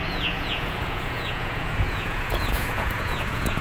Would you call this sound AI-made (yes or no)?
yes